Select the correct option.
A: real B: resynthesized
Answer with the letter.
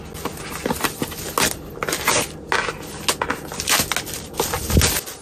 A